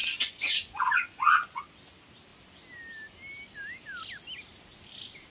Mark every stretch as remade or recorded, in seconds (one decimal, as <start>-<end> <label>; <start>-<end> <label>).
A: 0.0-1.6 remade; 1.6-5.3 recorded